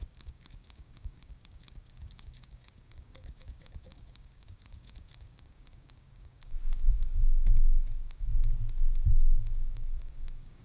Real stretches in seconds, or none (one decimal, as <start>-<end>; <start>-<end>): 8.3-9.1